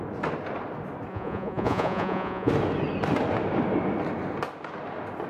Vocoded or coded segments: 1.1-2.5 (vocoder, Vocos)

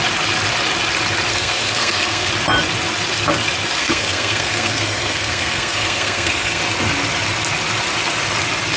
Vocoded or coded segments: 1.3-2.3 (codec, SNAC); 3.8-6.6

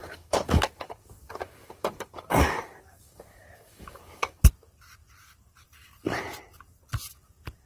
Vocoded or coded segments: 0.0-4.4 (codec, DAC)

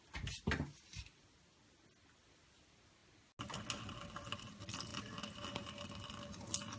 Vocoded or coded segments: 4.9-5.7 (vocoder, BigVGAN v2)

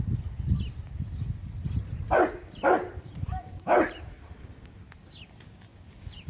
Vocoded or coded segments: 2.6-4.1 (vocoder, BigVGAN v2); 5.7-6.3